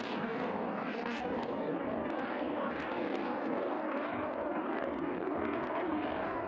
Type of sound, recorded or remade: remade